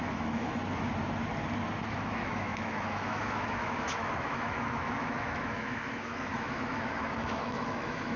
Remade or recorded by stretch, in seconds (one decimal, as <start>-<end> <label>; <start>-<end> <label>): 0.0-0.6 remade; 0.6-1.9 recorded; 1.9-8.2 remade